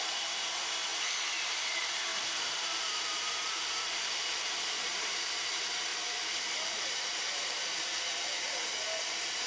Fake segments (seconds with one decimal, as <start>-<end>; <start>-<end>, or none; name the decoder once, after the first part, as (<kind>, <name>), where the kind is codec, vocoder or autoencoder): 2.1-5.3 (vocoder, BigVGAN v2); 5.9-8.5